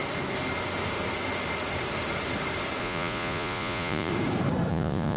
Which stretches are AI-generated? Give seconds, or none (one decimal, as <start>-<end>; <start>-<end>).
2.8-4.1; 4.7-5.2